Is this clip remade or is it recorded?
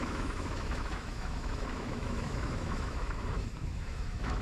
remade